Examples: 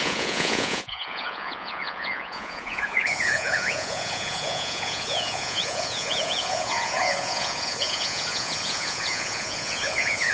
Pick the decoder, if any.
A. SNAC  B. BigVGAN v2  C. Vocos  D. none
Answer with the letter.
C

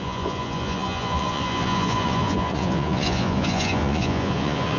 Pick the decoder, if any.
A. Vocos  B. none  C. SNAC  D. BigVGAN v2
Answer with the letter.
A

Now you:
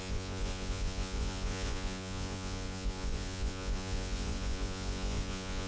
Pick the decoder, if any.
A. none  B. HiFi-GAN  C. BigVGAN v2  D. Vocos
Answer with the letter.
D